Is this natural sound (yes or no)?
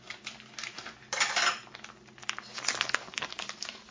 yes